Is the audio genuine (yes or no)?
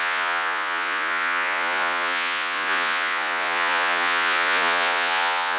no